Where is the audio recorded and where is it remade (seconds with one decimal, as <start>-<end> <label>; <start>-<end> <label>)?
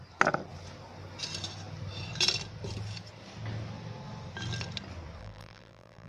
0.0-5.2 recorded; 5.2-6.1 remade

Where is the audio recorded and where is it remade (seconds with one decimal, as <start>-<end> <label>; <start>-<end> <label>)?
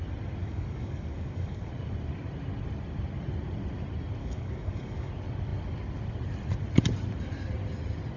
0.0-0.4 recorded; 0.4-1.7 remade; 1.7-4.2 recorded; 4.2-5.1 remade; 5.1-8.2 recorded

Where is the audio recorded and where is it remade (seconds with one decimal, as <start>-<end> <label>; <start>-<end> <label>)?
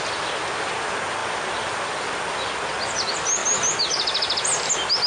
0.0-5.1 recorded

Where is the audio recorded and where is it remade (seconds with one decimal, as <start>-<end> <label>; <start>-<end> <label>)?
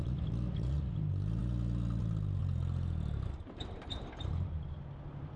0.0-2.4 recorded; 2.4-4.1 remade; 4.1-5.4 recorded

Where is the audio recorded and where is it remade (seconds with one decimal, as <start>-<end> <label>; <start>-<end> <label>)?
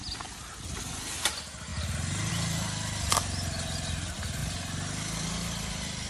0.0-6.1 recorded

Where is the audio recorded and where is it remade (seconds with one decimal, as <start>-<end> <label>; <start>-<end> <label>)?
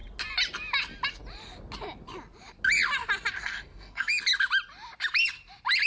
0.0-3.4 recorded; 3.4-4.1 remade; 4.1-5.9 recorded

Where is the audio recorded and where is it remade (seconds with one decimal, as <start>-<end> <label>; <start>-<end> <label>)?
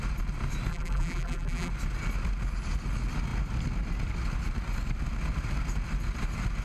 0.0-0.7 recorded; 0.7-1.7 remade; 1.7-6.6 recorded